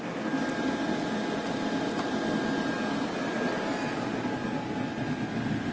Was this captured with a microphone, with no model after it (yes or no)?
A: yes